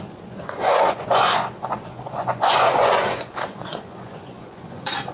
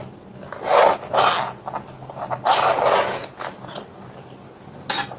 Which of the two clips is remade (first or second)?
first